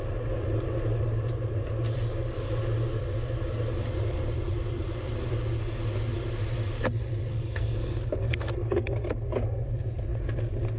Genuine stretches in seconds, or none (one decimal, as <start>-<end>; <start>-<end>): 0.0-7.3; 8.5-10.8